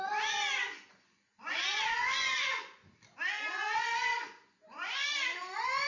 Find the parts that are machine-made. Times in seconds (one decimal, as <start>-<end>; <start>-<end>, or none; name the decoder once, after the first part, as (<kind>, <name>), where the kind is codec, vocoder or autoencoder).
0.0-2.8 (vocoder, Vocos); 3.5-5.9